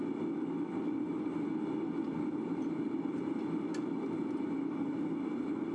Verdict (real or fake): real